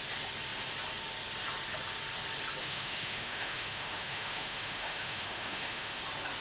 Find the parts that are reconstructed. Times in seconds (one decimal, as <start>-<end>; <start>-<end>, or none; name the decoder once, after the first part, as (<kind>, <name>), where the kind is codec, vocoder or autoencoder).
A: 2.6-6.0 (autoencoder, DAC-VAE)